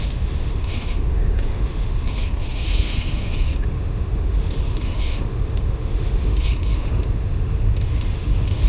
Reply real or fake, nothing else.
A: fake